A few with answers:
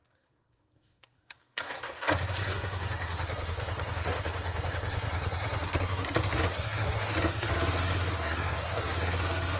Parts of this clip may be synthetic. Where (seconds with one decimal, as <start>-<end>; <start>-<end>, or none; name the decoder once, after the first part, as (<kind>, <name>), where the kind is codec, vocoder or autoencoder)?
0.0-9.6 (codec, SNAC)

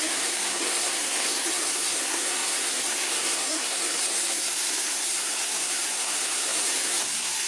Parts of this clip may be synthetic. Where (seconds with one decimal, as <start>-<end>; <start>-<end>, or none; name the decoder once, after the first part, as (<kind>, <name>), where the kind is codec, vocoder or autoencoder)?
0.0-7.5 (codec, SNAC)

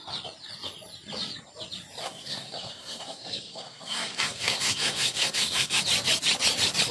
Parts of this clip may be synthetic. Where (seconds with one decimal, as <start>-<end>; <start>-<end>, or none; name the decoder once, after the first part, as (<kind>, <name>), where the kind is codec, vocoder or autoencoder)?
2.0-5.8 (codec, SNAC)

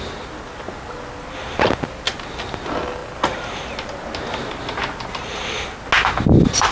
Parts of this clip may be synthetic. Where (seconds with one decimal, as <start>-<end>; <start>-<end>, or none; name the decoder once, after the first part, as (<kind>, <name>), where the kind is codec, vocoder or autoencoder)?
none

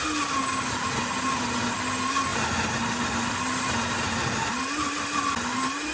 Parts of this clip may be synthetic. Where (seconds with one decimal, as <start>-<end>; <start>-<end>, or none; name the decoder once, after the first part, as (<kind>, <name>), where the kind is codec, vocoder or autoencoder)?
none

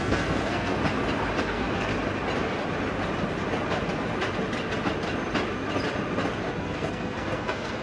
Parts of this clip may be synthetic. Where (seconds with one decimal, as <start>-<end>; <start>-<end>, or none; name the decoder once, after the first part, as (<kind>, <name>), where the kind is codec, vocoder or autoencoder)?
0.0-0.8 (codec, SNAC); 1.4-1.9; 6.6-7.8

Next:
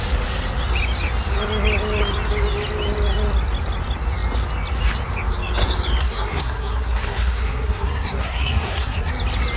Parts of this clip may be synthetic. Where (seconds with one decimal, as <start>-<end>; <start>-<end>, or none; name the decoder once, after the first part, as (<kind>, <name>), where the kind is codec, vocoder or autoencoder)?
6.0-9.1 (codec, SNAC)